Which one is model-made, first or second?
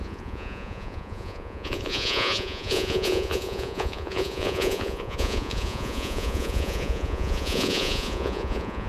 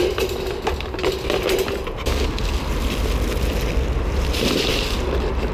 first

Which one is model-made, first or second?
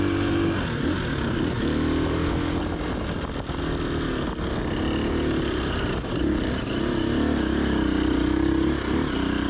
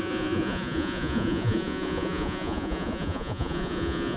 second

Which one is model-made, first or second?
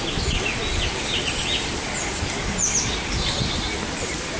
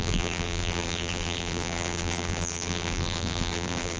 second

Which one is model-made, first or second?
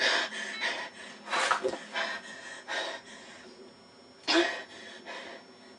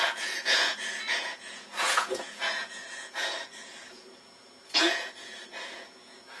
second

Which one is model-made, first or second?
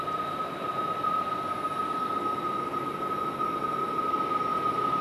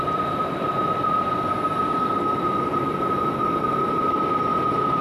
second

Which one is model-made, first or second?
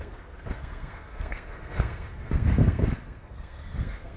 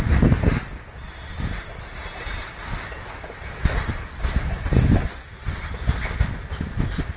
first